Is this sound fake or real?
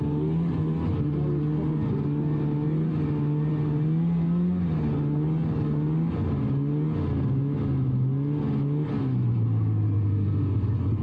real